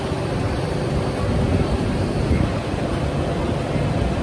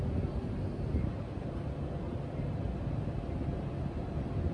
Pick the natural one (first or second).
second